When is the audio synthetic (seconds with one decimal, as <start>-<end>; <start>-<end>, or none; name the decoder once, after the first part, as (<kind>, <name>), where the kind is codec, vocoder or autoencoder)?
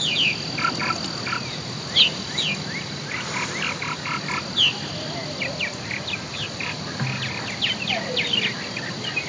none